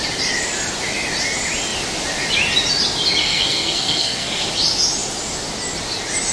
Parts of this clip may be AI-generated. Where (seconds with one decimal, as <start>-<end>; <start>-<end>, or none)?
3.2-4.5